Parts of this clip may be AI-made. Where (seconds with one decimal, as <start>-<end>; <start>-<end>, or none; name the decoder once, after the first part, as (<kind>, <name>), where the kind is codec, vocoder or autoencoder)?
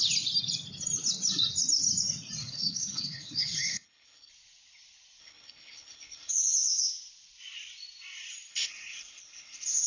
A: 2.4-4.3 (codec, HILCodec); 5.2-6.3; 8.5-9.9